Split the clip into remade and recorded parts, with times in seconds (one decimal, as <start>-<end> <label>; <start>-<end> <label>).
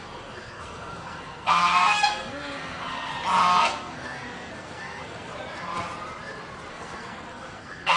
0.0-3.1 remade; 3.1-3.6 recorded; 3.6-5.3 remade; 5.3-6.7 recorded; 6.7-8.0 remade